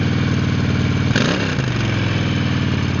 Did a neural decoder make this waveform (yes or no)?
no